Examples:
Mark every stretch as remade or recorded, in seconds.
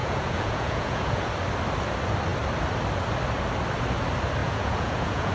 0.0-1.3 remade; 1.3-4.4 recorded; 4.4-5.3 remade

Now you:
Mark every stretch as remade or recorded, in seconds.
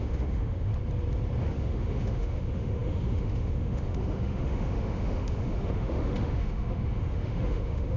0.0-0.7 remade; 0.7-1.5 recorded; 1.5-8.0 remade